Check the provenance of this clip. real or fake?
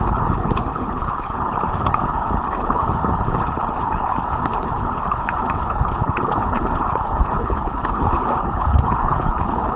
fake